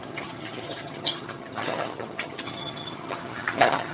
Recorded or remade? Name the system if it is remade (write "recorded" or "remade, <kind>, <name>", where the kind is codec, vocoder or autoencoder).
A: remade, vocoder, HiFi-GAN